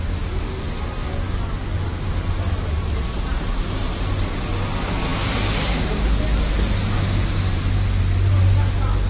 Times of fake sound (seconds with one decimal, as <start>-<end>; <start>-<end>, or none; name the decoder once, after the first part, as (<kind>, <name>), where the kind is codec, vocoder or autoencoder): none